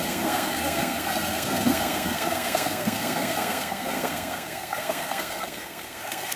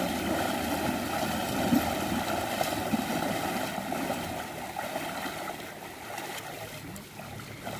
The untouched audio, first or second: second